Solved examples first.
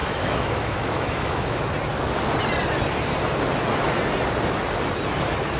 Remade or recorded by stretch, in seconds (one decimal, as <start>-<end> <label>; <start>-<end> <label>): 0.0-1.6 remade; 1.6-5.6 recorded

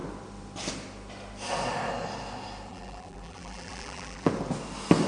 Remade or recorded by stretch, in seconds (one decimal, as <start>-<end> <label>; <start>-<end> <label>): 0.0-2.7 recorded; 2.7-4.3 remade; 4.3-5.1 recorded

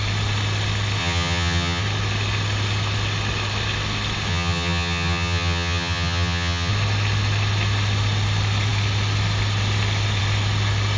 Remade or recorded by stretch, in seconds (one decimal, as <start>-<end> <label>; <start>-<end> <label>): 0.0-1.0 recorded; 1.0-1.8 remade; 1.8-4.3 recorded; 4.3-6.7 remade; 6.7-11.0 recorded

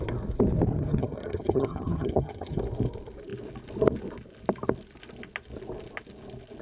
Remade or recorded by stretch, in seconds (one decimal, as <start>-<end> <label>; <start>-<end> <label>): 0.0-0.7 recorded; 0.7-2.6 remade; 2.6-6.6 recorded

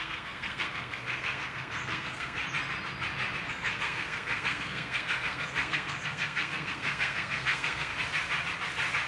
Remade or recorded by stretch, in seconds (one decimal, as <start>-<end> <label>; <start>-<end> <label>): 0.0-2.4 remade; 2.4-3.5 recorded; 3.5-7.9 remade; 7.9-9.1 recorded

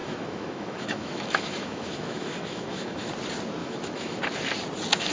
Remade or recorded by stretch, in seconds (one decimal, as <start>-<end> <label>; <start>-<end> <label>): 0.0-3.1 remade; 3.1-3.6 recorded; 3.6-4.2 remade; 4.2-5.1 recorded

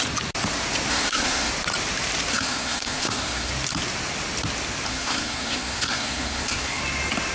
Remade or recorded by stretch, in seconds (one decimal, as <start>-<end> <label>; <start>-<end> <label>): 0.0-0.9 recorded; 0.9-1.5 remade; 1.5-2.3 recorded; 2.3-3.5 remade; 3.5-4.9 recorded; 4.9-6.8 remade; 6.8-7.3 recorded

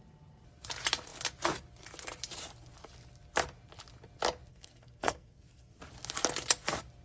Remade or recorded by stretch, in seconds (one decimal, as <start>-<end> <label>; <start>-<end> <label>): 0.0-4.5 recorded; 4.5-5.8 remade; 5.8-7.0 recorded